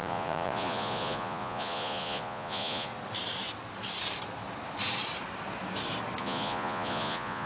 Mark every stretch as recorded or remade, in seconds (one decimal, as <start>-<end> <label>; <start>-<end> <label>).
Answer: 0.0-2.9 remade; 2.9-6.2 recorded; 6.2-7.5 remade